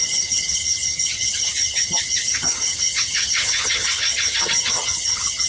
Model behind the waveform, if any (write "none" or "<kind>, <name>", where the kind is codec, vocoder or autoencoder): vocoder, HiFi-GAN